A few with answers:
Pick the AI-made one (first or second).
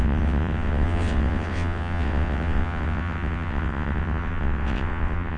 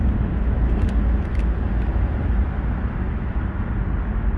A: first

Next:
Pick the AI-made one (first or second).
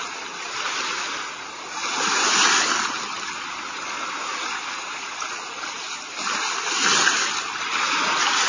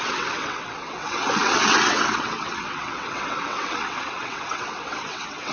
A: second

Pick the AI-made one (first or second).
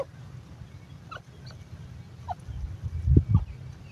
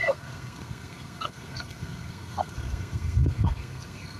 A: second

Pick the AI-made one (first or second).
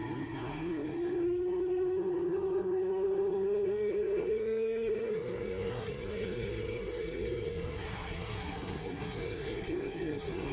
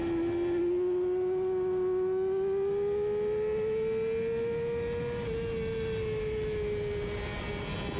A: first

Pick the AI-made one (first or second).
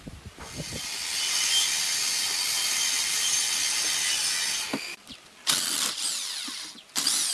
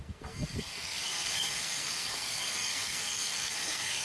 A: second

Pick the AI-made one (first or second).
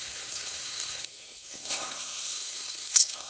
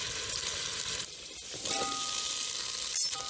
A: first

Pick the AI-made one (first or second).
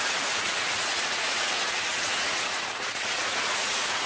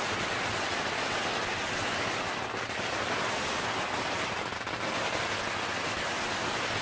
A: first